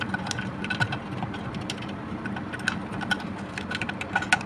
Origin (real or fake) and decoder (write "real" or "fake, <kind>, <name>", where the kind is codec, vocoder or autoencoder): real